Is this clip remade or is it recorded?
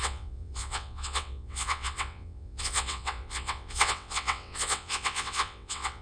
remade